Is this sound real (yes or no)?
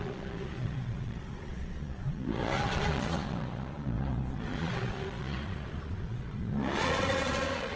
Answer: no